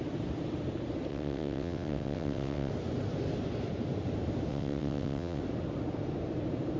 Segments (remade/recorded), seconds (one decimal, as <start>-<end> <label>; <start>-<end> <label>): 0.0-1.1 recorded; 1.1-2.7 remade; 2.7-4.5 recorded; 4.5-5.4 remade; 5.4-6.8 recorded